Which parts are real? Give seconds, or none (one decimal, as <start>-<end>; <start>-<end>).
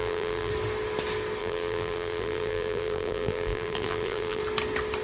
0.5-1.4; 4.4-5.0